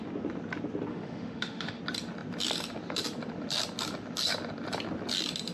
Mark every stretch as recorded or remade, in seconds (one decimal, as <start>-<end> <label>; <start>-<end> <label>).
0.0-0.9 recorded; 0.9-1.8 remade; 1.8-5.5 recorded